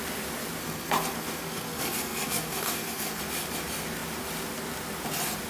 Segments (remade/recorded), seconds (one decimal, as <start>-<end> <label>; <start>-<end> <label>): 0.0-0.6 recorded; 0.6-3.2 remade; 3.2-5.5 recorded